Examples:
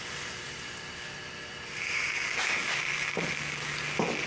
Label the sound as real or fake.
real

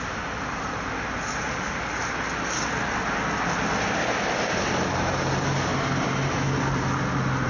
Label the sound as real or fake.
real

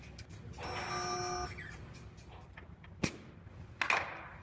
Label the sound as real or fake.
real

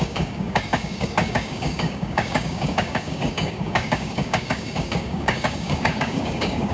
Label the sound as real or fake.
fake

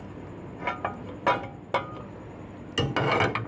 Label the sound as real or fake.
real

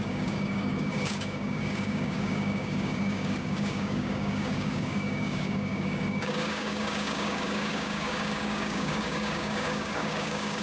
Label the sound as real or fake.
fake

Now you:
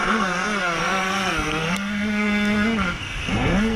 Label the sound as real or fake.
fake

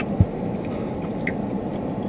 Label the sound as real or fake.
real